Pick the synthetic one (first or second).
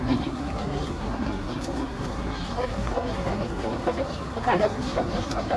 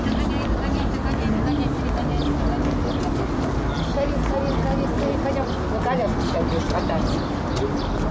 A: first